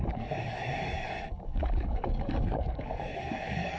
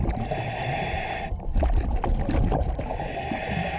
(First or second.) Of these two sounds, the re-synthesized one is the first